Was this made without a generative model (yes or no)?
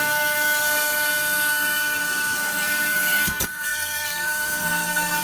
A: no